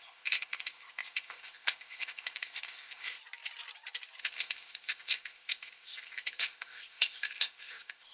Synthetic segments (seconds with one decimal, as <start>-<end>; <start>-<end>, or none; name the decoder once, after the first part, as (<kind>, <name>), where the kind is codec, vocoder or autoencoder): 0.0-3.2 (codec, ZipCodec); 4.2-8.1